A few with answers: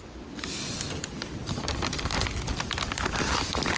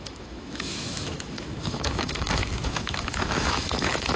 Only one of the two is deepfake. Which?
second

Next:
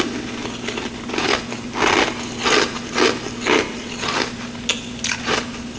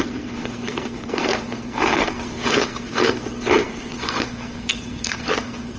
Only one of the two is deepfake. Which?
second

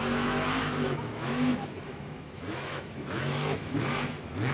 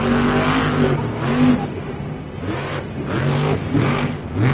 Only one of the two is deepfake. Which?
first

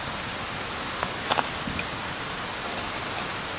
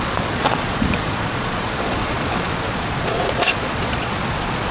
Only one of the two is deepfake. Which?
second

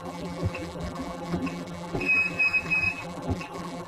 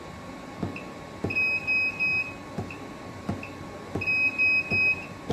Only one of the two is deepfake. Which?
first